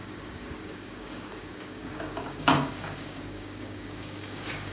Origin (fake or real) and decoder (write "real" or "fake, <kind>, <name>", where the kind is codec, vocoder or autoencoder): fake, codec, DAC